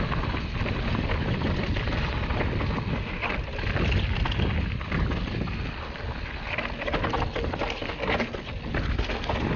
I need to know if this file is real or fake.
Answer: real